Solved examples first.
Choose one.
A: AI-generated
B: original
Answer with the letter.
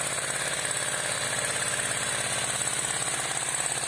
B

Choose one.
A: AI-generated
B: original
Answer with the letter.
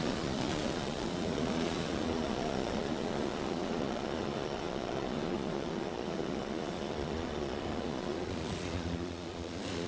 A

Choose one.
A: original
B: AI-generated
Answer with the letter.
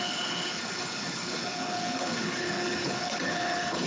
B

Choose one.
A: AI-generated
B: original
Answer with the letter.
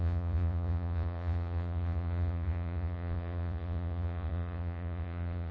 A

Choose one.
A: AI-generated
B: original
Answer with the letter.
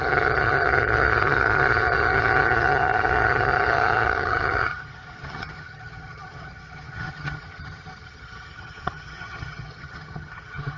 A